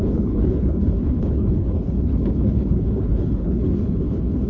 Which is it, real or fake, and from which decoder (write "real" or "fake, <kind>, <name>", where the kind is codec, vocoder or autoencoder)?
fake, codec, HILCodec